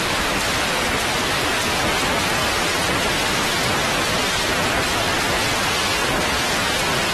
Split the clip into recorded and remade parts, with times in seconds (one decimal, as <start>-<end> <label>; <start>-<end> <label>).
0.0-2.4 recorded; 2.4-5.2 remade; 5.2-6.0 recorded; 6.0-6.5 remade; 6.5-7.1 recorded